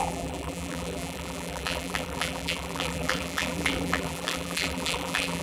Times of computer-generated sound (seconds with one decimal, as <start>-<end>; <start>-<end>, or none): 0.0-5.4